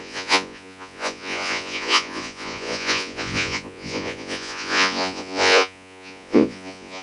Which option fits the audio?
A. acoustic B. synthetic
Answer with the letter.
B